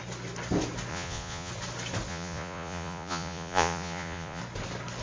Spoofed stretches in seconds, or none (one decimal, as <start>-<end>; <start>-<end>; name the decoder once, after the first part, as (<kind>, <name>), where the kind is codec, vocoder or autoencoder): 0.9-1.5 (vocoder, Vocos); 2.1-4.4